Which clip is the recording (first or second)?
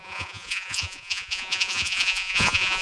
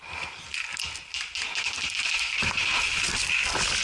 second